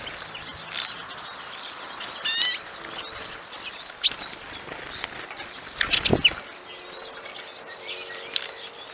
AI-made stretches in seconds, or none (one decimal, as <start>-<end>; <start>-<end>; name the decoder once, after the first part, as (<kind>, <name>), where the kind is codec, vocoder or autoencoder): 0.0-0.5 (vocoder, BigVGAN v2); 3.0-6.1; 7.7-8.9